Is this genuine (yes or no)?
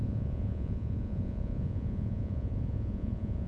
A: no